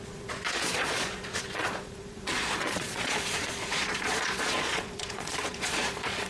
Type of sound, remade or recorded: remade